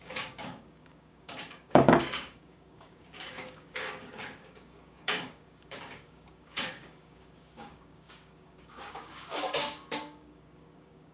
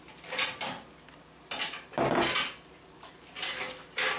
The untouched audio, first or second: second